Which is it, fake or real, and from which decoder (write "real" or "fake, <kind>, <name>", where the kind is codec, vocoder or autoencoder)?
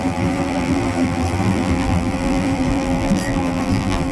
fake, vocoder, BigVGAN v2